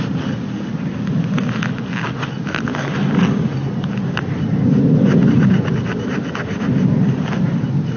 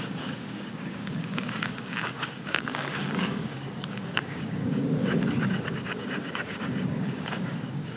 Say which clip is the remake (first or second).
second